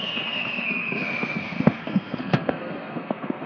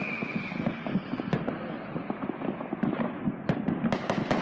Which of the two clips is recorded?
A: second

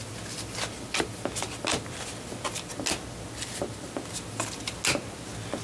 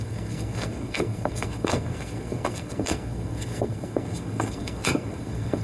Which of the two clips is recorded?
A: first